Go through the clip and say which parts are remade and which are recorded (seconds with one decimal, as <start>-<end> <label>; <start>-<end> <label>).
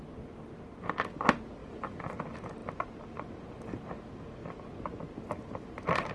0.0-1.6 recorded; 1.6-2.1 remade; 2.1-6.1 recorded